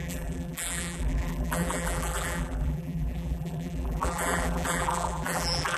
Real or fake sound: fake